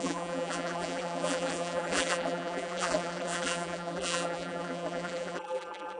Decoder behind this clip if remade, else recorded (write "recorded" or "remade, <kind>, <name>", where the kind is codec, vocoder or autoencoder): remade, vocoder, BigVGAN v2